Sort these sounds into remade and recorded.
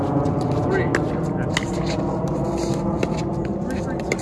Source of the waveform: recorded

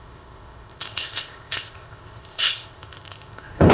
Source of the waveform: remade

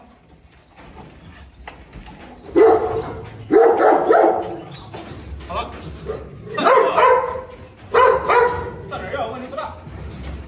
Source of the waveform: recorded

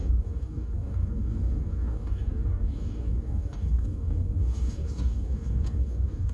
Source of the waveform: remade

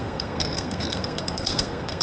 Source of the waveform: remade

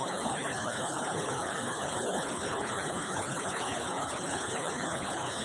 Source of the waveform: remade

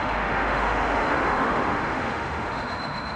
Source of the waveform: remade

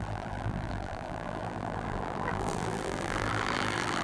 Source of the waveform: remade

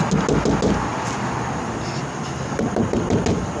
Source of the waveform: recorded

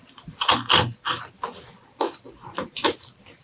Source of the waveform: recorded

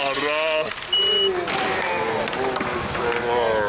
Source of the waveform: recorded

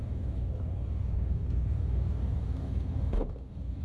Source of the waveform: remade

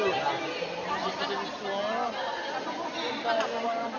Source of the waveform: recorded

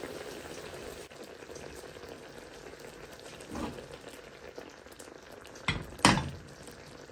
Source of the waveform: recorded